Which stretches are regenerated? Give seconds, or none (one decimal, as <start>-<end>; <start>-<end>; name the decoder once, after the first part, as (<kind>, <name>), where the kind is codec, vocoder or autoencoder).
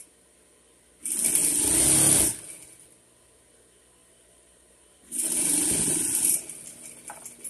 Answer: 4.0-6.8 (vocoder, BigVGAN v2)